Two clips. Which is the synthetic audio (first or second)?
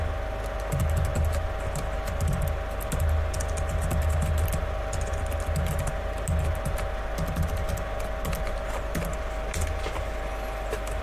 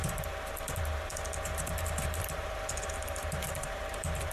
second